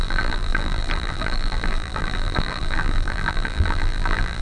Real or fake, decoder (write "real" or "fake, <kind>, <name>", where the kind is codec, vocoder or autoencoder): fake, vocoder, BigVGAN v2